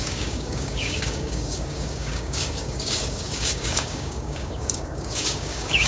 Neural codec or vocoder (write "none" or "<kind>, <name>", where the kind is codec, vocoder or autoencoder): codec, DAC